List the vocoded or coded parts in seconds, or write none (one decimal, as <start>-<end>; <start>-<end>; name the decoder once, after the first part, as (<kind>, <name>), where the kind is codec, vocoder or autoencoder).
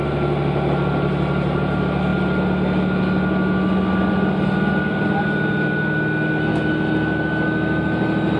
none